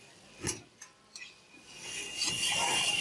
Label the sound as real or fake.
real